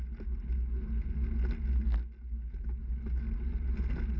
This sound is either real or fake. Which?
real